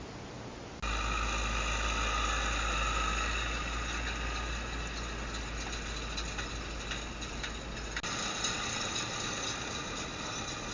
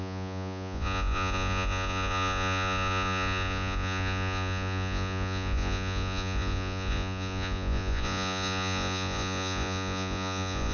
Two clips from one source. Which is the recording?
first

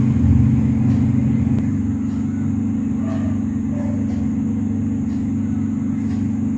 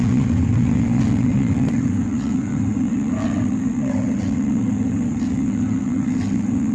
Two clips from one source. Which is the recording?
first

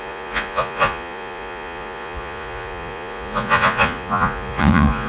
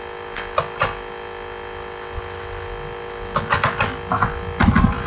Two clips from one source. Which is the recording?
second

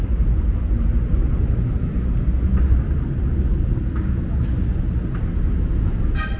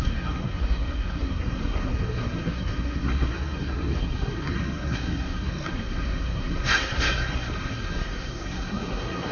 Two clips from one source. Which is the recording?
first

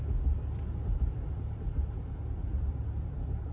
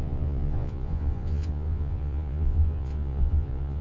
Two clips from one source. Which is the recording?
first